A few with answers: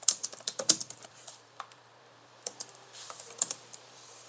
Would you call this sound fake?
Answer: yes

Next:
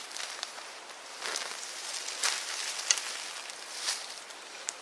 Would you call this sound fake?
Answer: no